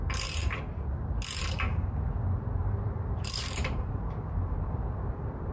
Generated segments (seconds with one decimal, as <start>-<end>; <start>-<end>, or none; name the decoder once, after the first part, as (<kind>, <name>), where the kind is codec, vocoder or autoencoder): 2.6-5.5 (vocoder, BigVGAN v2)

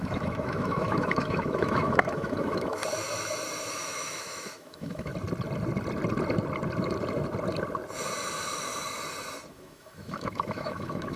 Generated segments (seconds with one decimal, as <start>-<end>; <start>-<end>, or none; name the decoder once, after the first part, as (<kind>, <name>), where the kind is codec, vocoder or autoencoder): 0.0-2.8 (autoencoder, DAC-VAE); 3.7-5.1; 9.5-11.2

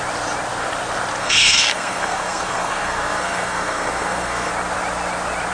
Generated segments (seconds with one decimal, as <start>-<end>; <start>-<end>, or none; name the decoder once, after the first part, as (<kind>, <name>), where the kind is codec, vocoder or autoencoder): 1.2-4.5 (codec, SNAC)

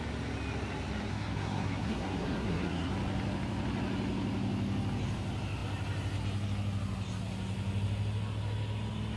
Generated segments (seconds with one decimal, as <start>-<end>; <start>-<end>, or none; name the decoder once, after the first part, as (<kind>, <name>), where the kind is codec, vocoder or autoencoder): 1.1-2.9 (codec, SNAC)

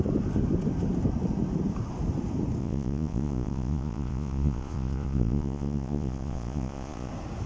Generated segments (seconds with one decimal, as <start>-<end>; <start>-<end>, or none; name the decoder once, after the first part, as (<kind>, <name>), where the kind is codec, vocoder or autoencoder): 2.6-7.1 (vocoder, Vocos)

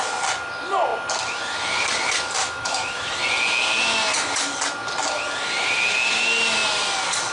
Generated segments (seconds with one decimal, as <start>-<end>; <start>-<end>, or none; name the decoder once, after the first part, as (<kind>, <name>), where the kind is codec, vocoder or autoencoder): 2.4-3.2 (autoencoder, DAC-VAE)

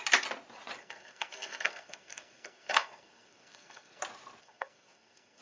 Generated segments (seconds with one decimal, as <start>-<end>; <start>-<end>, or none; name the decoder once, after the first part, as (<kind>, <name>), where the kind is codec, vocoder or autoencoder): 0.8-4.0 (codec, SNAC); 4.4-5.4

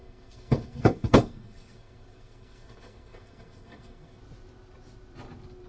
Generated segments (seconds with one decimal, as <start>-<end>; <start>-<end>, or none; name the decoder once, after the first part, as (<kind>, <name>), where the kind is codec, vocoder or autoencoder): 0.0-4.2 (codec, SNAC)